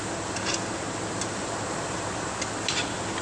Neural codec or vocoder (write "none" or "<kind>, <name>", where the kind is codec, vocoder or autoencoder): none